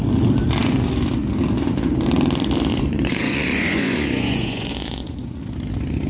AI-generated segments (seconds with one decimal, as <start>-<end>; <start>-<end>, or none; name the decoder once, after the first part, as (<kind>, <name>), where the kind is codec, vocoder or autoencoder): 2.7-5.4 (vocoder, Vocos)